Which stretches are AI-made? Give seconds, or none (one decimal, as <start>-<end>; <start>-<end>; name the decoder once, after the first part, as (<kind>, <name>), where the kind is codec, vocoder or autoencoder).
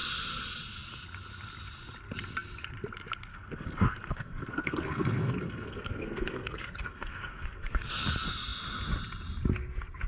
3.3-8.1 (codec, SNAC)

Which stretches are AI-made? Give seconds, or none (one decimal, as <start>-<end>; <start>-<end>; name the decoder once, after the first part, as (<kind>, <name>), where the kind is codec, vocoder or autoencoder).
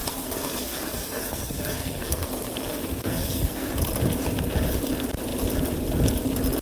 0.0-3.7 (codec, SNAC)